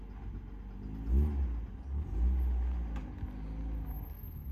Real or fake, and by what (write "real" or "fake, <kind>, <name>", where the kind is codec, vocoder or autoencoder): real